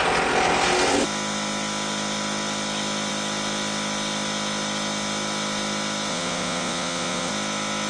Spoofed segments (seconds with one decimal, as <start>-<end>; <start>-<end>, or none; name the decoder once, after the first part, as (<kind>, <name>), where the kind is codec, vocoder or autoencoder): 6.1-7.3 (vocoder, Vocos)